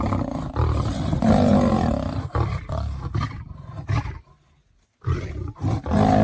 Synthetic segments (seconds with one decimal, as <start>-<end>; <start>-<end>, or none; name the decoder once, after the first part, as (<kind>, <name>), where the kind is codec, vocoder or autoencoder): none